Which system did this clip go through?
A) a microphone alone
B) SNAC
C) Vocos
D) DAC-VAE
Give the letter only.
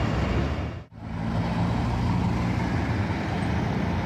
A